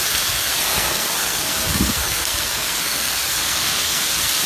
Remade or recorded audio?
remade